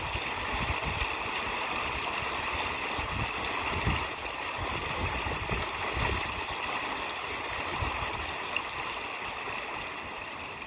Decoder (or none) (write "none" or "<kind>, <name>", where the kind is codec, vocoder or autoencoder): none